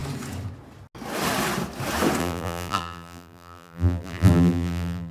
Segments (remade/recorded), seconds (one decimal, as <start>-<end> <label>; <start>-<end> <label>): 0.0-2.2 recorded; 2.2-5.1 remade